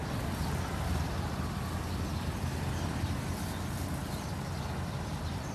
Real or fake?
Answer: real